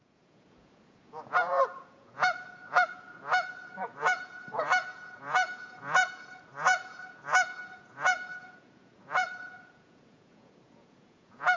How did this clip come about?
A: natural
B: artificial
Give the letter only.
B